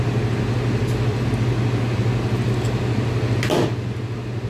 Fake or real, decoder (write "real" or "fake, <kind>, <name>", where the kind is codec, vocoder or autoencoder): real